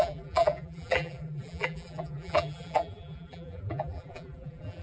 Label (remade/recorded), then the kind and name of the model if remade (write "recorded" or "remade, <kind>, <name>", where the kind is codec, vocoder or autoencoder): remade, vocoder, BigVGAN v2